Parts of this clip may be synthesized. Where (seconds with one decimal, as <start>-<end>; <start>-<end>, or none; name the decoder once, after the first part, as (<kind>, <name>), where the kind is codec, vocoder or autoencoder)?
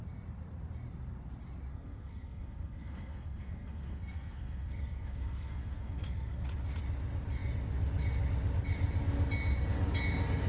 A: 1.7-6.4 (codec, SNAC)